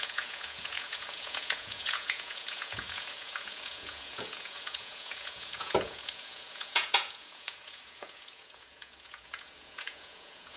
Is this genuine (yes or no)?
no